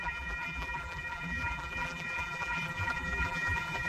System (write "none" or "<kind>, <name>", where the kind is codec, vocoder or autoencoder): vocoder, BigVGAN v2